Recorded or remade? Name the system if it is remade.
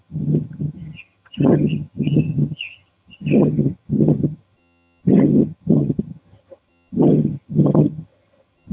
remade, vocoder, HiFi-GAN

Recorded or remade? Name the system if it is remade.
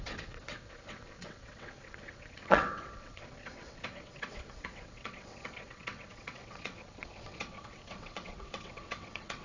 remade, vocoder, WaveNeXt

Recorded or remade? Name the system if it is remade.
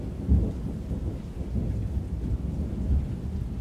recorded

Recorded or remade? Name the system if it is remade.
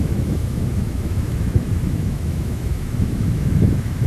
remade, autoencoder, DAC-VAE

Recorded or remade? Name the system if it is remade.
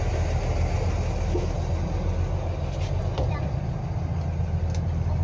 recorded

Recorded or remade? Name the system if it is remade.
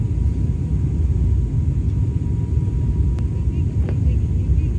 recorded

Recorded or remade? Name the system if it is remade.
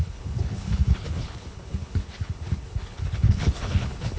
remade, codec, HILCodec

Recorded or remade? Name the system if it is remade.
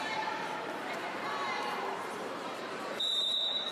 remade, vocoder, BigVGAN v2